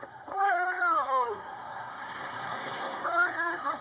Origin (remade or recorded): remade